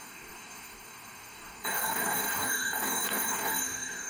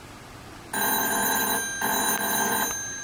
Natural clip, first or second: second